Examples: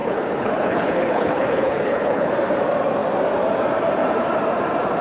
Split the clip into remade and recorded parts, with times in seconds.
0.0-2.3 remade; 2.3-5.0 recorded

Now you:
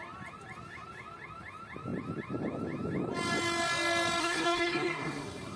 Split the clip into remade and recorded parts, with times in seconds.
0.0-4.2 recorded; 4.2-5.6 remade

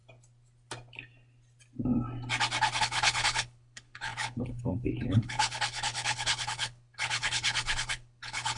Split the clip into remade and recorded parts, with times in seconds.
0.0-2.8 recorded; 2.8-8.6 remade

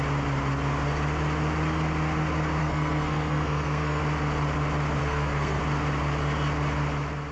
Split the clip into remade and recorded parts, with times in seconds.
0.0-2.6 recorded; 2.6-4.0 remade; 4.0-5.0 recorded; 5.0-5.6 remade; 5.6-7.3 recorded